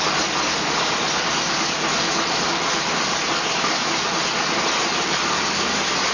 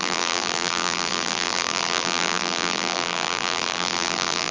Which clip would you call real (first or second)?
first